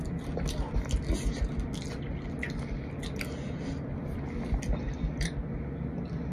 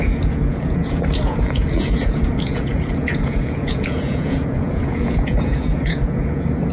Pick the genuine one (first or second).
first